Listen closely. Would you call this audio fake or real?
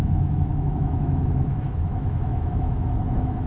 fake